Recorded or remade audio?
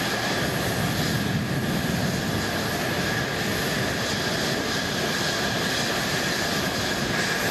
recorded